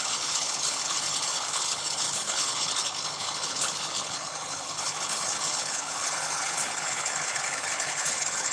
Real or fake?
fake